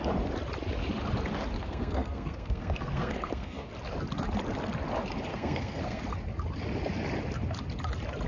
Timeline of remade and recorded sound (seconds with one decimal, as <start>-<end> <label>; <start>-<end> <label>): 0.0-1.6 recorded; 1.6-3.7 remade; 3.7-5.3 recorded; 5.3-6.0 remade; 6.0-8.3 recorded